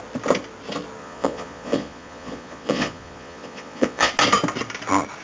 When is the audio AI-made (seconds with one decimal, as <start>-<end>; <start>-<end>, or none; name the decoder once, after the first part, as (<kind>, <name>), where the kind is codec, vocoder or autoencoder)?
1.0-4.1 (vocoder, Vocos)